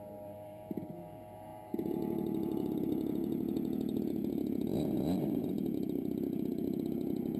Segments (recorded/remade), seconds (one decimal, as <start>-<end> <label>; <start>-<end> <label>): 0.0-7.4 remade